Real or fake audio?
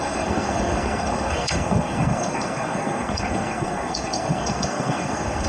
fake